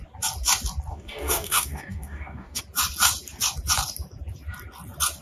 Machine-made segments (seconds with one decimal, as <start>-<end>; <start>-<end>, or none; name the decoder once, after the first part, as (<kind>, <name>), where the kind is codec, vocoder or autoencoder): 0.9-2.6 (codec, DAC)